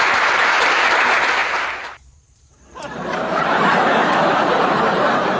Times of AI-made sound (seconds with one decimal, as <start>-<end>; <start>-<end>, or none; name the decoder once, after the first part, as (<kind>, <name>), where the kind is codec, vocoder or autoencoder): 0.0-5.4 (vocoder, BigVGAN v2)